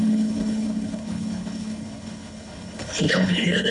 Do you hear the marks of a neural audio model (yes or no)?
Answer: yes